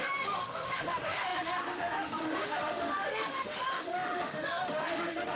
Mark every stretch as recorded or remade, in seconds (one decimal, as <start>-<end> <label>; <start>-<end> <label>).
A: 0.0-5.3 remade